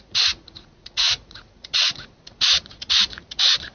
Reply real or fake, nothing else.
fake